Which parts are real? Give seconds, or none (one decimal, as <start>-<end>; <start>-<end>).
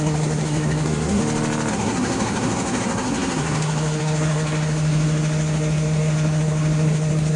1.2-1.7